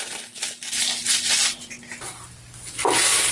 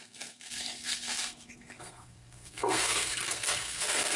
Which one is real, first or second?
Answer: first